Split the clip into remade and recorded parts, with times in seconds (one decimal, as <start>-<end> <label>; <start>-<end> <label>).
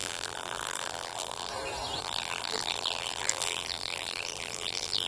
0.0-1.5 remade; 1.5-2.0 recorded; 2.0-5.1 remade